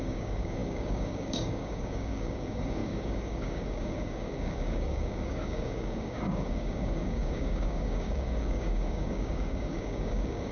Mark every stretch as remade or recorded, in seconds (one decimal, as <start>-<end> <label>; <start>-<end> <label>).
0.0-10.5 remade